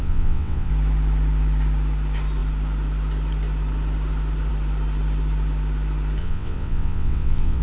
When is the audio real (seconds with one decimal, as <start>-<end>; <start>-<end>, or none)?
0.7-6.2